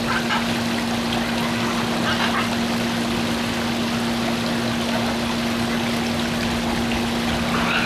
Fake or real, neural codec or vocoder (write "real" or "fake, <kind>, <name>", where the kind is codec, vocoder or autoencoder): real